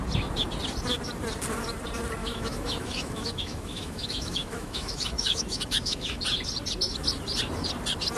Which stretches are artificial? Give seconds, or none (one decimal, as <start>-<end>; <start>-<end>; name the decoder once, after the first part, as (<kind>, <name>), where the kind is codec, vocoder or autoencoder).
2.2-6.2 (autoencoder, DAC-VAE)